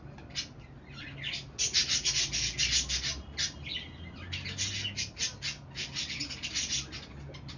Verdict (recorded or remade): recorded